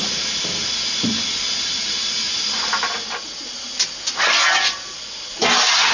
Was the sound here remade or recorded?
recorded